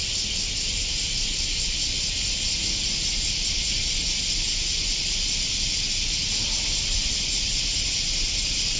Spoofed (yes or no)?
no